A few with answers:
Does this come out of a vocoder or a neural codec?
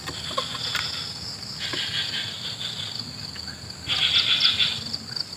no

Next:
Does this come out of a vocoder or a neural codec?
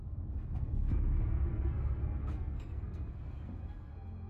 yes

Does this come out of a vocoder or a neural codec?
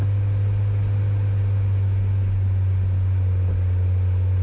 no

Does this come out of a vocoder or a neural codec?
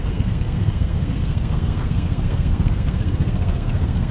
yes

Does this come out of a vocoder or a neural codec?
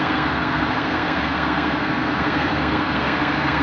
yes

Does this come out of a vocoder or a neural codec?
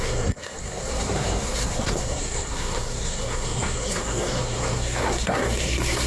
yes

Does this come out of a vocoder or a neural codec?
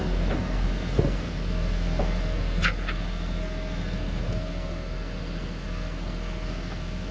yes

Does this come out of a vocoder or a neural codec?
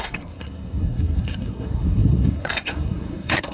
yes